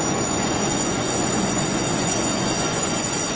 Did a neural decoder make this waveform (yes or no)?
yes